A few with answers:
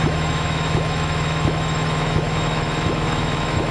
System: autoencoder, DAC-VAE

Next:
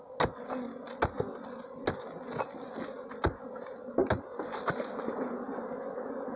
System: none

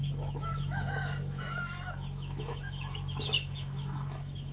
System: autoencoder, DAC-VAE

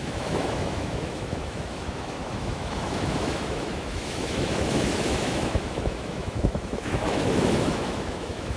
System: autoencoder, DAC-VAE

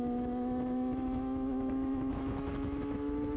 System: autoencoder, DAC-VAE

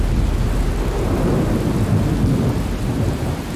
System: none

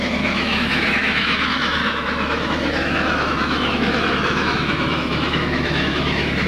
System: autoencoder, DAC-VAE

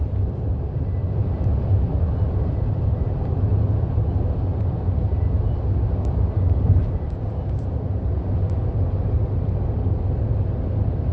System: none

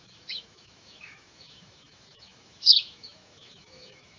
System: autoencoder, DAC-VAE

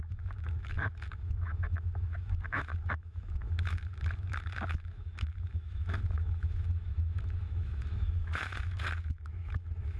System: autoencoder, DAC-VAE